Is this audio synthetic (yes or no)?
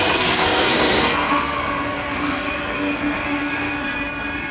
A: yes